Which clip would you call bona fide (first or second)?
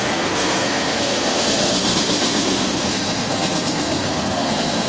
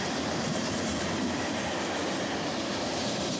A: second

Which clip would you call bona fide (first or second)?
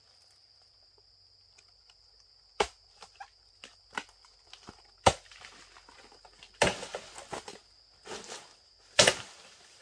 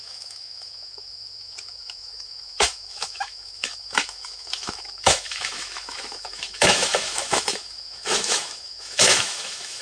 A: first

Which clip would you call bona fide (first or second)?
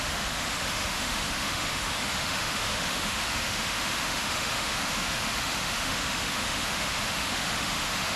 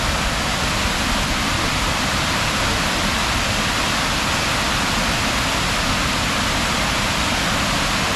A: second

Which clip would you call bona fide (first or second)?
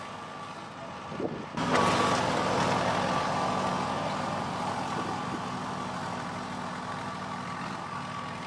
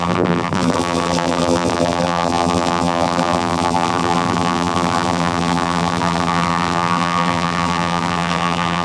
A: first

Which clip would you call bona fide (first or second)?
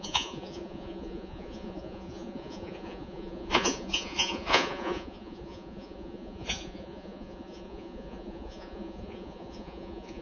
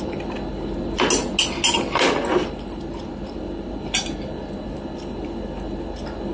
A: second